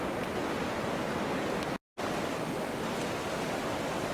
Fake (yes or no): no